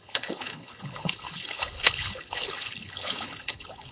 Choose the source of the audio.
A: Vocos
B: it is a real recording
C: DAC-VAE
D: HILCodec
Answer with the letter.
D